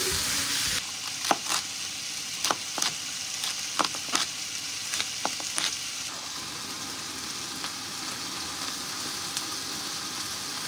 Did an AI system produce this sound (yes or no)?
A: no